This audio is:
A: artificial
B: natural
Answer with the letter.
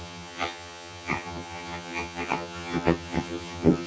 A